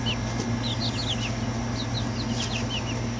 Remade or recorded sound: recorded